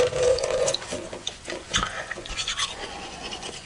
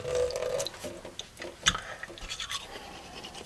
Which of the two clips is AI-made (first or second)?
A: first